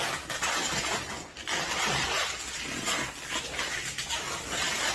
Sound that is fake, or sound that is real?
real